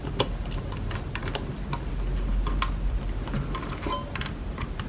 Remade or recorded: recorded